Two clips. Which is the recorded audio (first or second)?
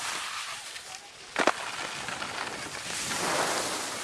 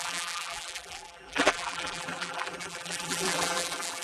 first